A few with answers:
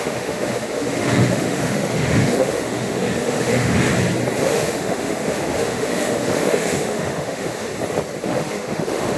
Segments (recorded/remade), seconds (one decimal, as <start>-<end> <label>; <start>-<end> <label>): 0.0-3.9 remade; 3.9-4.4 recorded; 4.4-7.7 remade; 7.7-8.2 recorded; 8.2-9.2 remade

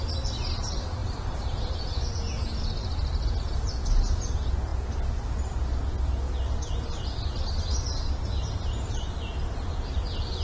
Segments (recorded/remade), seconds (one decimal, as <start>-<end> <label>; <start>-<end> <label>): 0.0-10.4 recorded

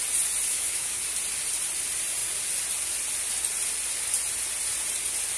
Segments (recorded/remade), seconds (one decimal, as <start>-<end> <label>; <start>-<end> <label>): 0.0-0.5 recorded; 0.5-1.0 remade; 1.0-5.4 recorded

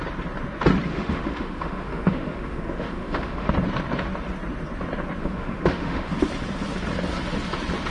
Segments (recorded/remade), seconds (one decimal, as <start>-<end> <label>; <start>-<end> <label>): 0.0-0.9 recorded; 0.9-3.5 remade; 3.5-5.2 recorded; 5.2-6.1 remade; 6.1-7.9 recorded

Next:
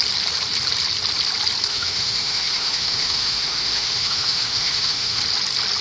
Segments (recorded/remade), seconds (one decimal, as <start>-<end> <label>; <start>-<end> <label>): 0.0-1.7 recorded; 1.7-5.2 remade; 5.2-5.8 recorded

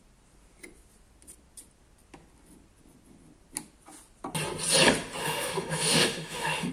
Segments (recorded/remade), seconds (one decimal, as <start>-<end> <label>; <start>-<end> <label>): 0.0-5.2 recorded; 5.2-6.7 remade